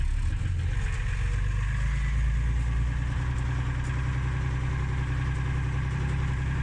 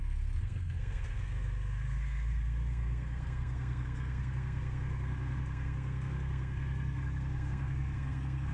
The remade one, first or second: second